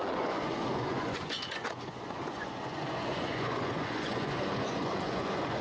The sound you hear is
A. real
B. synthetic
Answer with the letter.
B